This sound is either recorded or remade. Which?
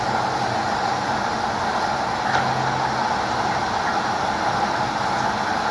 recorded